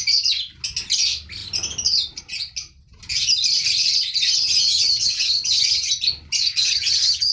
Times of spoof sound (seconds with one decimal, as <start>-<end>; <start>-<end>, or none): 4.7-5.9; 6.6-7.3